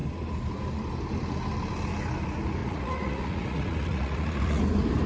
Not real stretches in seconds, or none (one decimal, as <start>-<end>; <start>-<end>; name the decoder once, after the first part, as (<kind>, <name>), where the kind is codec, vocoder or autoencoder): 2.6-4.6 (vocoder, Vocos)